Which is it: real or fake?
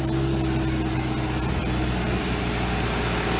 real